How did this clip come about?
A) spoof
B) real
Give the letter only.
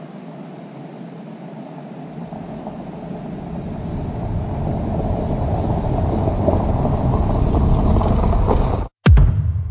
B